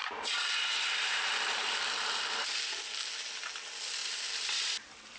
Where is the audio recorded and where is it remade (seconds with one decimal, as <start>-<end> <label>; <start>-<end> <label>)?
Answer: 0.0-3.1 remade; 3.1-4.0 recorded; 4.0-5.2 remade